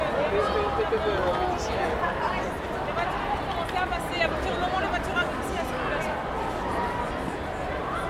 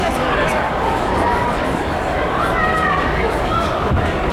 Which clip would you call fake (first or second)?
second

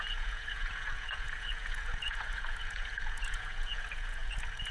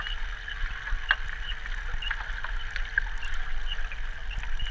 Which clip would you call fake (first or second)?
first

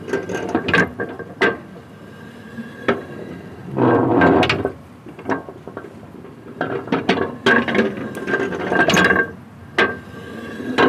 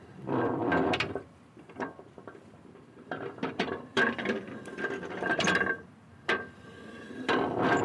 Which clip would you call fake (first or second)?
second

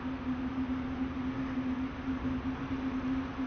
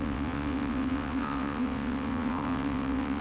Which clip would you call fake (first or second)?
second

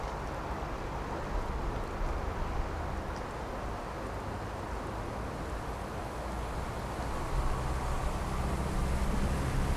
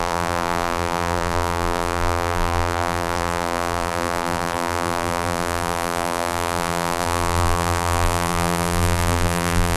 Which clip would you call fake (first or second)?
second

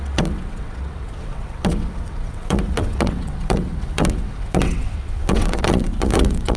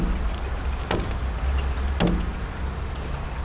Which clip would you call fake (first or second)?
first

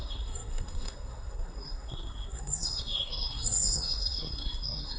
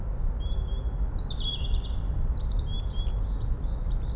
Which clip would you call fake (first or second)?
first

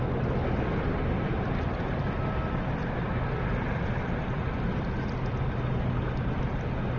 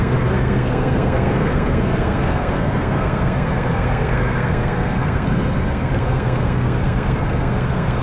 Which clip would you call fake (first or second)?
second